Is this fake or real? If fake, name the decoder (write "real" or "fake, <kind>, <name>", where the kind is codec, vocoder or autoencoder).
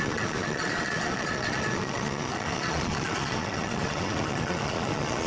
fake, vocoder, Vocos